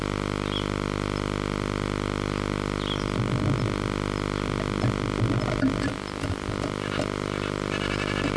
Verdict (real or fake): real